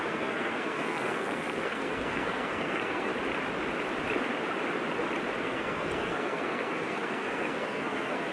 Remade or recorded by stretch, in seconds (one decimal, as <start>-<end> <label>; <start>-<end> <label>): 0.0-3.1 remade; 3.1-5.4 recorded; 5.4-8.3 remade